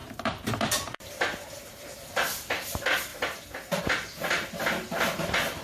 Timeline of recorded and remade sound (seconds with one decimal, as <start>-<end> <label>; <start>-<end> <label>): 0.0-1.9 remade; 1.9-3.1 recorded; 3.1-3.8 remade; 3.8-5.6 recorded